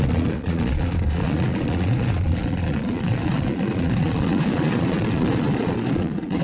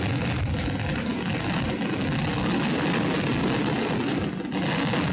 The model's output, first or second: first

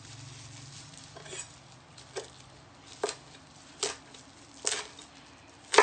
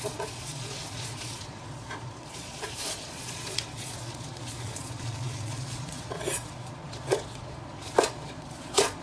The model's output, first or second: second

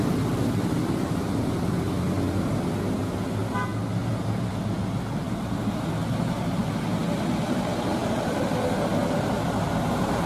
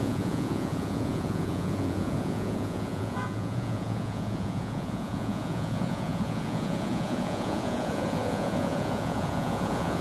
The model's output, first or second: second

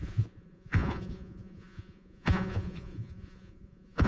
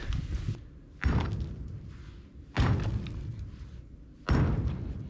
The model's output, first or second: first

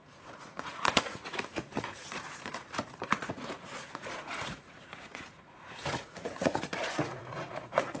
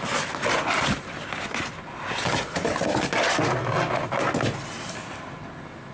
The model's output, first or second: first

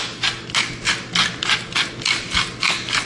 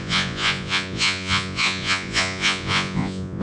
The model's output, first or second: second